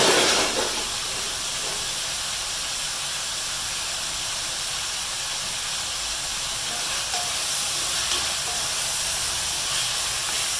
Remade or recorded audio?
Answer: recorded